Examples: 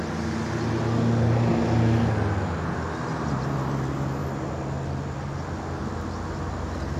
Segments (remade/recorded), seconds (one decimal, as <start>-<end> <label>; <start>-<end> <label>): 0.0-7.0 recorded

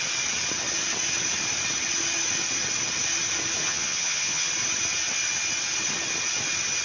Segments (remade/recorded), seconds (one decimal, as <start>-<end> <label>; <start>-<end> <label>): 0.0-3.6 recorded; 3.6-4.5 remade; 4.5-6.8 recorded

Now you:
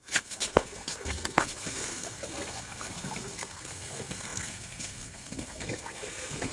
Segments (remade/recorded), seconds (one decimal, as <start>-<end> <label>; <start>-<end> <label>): 0.0-6.5 remade

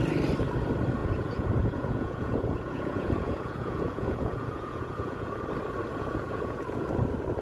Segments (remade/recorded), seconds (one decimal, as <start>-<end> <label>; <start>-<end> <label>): 0.0-1.0 recorded; 1.0-5.4 remade; 5.4-5.9 recorded; 5.9-6.9 remade; 6.9-7.4 recorded

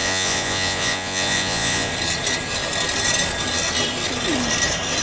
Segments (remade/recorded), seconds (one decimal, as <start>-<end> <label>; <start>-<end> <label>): 0.0-1.9 remade; 1.9-5.0 recorded

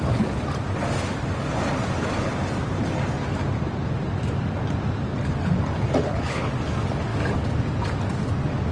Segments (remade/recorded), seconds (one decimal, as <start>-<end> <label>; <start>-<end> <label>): 0.0-6.0 recorded; 6.0-6.5 remade; 6.5-8.7 recorded